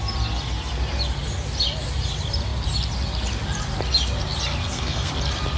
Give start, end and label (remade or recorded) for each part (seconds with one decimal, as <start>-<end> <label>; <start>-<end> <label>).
0.0-4.6 recorded; 4.6-5.1 remade; 5.1-5.6 recorded